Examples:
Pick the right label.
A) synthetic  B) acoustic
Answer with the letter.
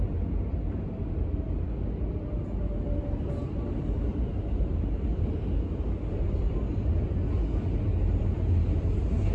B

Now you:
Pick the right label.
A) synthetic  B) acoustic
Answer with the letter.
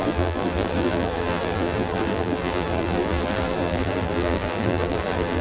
A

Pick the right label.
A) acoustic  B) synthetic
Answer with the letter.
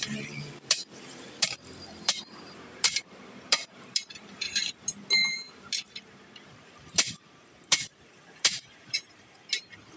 B